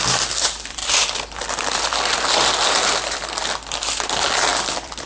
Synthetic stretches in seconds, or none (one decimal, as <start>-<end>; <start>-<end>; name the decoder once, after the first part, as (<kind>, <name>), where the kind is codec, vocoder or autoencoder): 4.5-5.1 (vocoder, BigVGAN v2)

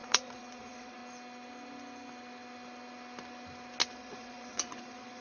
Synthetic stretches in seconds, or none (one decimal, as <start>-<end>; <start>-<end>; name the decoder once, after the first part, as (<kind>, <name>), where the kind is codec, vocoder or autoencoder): 0.0-1.0 (vocoder, Vocos); 3.9-5.2

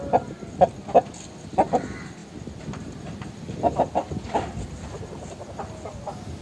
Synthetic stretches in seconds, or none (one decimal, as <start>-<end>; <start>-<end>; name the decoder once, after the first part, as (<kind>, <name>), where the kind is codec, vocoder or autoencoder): none